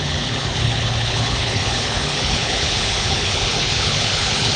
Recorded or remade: remade